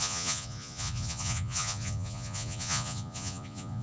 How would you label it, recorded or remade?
remade